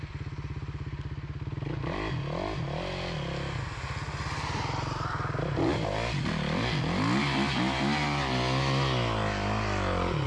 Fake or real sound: real